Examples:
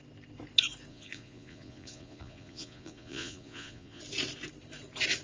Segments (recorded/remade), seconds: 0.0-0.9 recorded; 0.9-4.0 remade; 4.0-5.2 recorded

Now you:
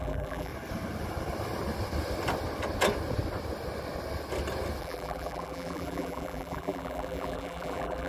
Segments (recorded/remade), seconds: 0.0-0.5 remade; 0.5-4.8 recorded; 4.8-8.1 remade

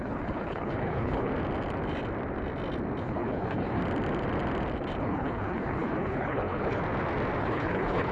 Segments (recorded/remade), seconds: 0.0-1.3 remade; 1.3-3.0 recorded; 3.0-3.8 remade; 3.8-5.0 recorded; 5.0-6.8 remade; 6.8-7.4 recorded; 7.4-8.1 remade

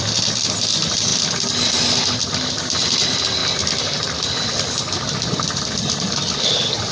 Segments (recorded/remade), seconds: 0.0-3.4 remade; 3.4-5.0 recorded; 5.0-6.9 remade

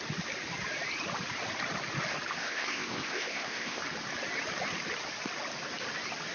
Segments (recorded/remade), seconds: 0.0-2.4 recorded; 2.4-3.8 remade; 3.8-6.3 recorded

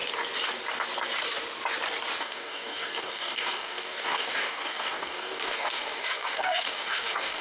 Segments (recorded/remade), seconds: 0.0-2.2 recorded; 2.2-7.4 remade

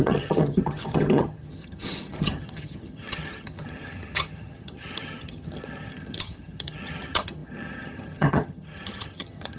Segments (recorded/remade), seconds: 0.0-9.6 remade